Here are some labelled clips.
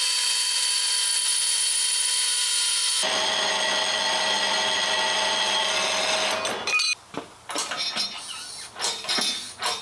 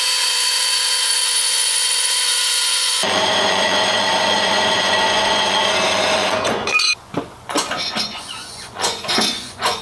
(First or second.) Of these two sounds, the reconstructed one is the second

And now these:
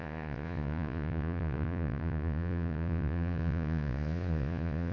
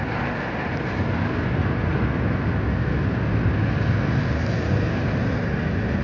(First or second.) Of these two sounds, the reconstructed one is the first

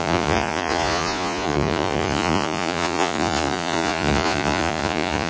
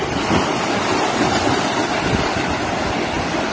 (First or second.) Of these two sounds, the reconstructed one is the first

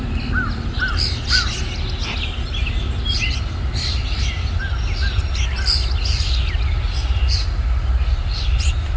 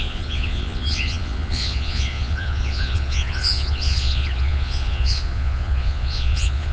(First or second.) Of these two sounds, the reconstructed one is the second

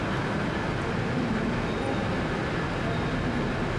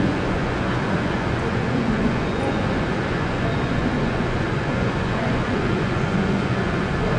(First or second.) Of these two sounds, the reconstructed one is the second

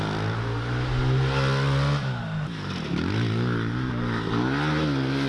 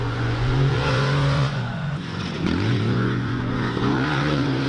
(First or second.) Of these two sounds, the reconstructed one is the second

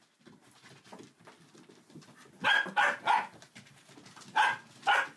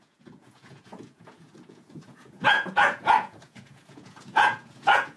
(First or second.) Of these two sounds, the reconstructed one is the second